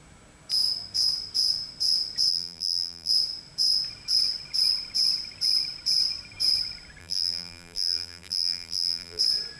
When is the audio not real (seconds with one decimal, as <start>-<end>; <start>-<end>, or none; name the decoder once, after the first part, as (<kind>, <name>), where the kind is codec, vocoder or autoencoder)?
2.3-3.1 (vocoder, BigVGAN v2); 7.0-9.2